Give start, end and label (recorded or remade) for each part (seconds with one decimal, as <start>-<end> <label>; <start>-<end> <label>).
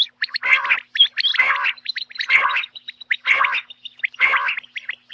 0.0-5.1 recorded